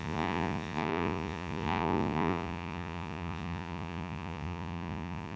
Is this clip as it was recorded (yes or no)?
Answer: no